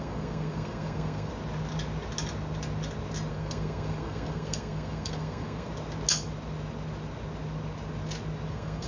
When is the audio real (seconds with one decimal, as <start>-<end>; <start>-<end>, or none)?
1.3-3.3; 5.7-8.5